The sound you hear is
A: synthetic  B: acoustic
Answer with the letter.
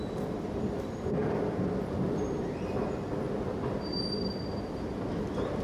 B